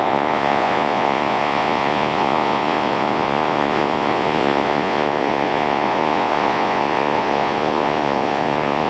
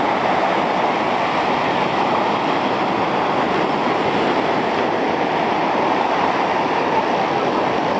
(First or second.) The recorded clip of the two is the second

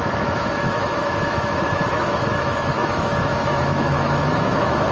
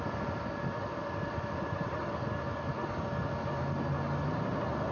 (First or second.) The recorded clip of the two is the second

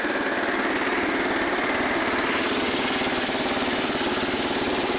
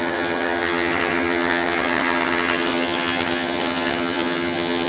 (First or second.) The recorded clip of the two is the first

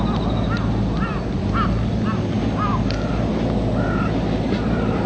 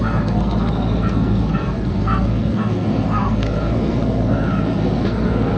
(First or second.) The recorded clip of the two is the first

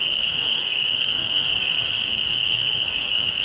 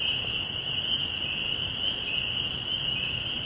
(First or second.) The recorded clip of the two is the second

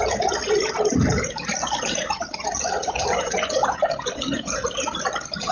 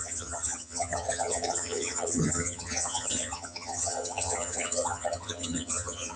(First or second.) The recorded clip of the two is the first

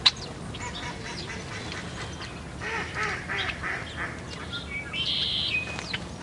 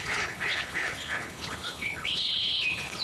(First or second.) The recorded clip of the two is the first